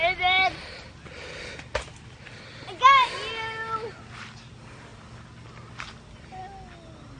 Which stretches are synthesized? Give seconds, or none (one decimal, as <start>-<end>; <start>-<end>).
none